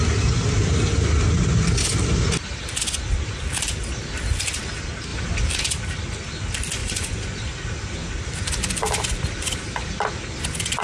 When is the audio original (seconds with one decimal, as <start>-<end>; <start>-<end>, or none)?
0.0-6.8; 7.4-10.8